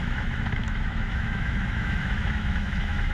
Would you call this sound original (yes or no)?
no